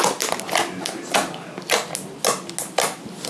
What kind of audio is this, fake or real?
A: real